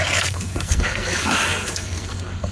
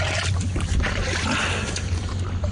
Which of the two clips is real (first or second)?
second